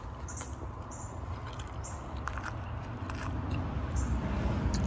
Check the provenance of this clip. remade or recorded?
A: recorded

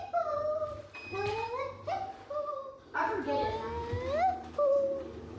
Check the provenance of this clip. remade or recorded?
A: recorded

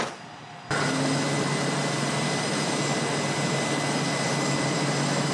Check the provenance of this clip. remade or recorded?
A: recorded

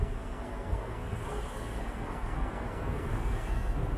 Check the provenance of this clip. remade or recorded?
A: remade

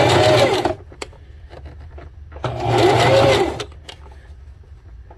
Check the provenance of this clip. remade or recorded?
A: recorded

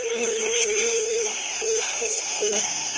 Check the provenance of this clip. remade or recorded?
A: remade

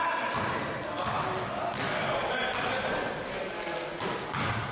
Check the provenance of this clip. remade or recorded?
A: recorded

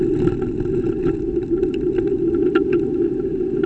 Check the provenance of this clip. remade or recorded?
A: recorded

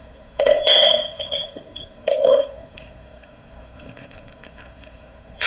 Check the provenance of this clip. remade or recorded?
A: remade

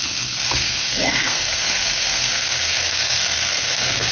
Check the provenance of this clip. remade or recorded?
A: remade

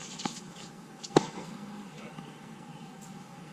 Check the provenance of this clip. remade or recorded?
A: remade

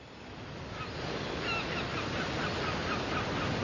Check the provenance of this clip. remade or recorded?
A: recorded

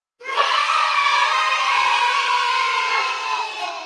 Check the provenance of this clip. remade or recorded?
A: remade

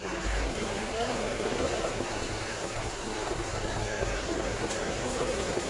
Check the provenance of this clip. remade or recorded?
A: remade